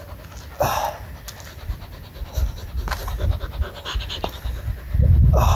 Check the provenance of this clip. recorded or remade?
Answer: recorded